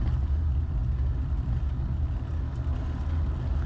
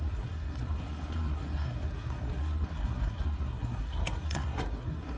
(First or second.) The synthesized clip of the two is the second